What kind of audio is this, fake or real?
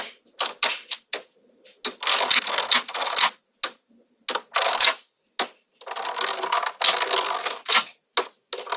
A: real